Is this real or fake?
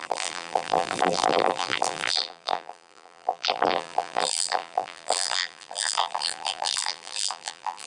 fake